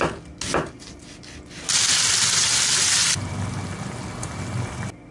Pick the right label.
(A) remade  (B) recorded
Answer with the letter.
B